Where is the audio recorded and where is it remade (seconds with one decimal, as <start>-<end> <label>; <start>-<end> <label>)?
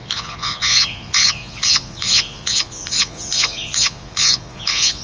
0.0-5.0 remade